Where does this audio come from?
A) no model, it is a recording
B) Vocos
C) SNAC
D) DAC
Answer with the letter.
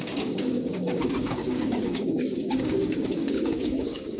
D